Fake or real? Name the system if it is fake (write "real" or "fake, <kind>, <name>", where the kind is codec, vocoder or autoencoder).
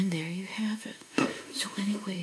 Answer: fake, autoencoder, DAC-VAE